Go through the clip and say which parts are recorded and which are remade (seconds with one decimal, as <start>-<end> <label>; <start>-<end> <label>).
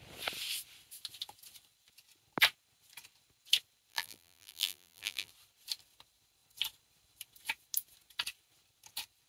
0.0-3.9 recorded; 3.9-5.3 remade; 5.3-9.3 recorded